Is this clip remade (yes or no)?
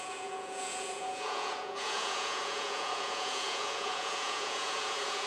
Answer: yes